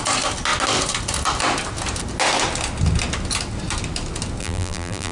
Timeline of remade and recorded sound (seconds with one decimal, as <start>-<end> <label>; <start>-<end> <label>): 0.0-4.4 recorded; 4.4-5.1 remade